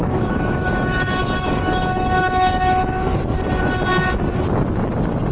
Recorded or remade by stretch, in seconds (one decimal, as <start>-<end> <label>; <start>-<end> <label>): 0.0-3.2 remade; 3.2-5.3 recorded